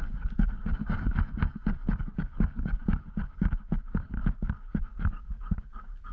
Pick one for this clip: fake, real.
fake